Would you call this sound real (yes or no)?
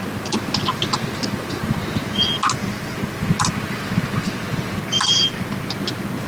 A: yes